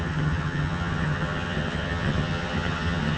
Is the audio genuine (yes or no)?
no